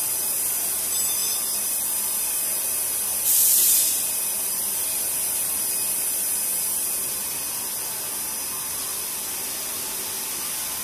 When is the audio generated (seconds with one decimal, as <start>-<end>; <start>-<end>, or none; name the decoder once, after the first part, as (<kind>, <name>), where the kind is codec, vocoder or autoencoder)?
8.9-10.3 (vocoder, BigVGAN v2)